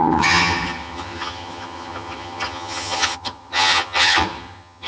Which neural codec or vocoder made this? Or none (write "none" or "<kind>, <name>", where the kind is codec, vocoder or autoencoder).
vocoder, HiFi-GAN